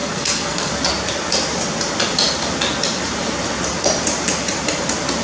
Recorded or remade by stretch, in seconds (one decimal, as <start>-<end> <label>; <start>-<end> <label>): 0.0-0.7 remade; 0.7-5.2 recorded